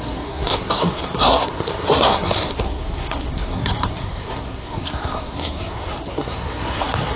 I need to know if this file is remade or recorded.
remade